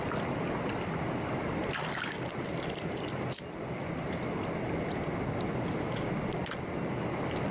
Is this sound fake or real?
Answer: real